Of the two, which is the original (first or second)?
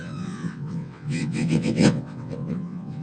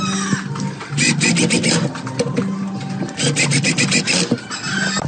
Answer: second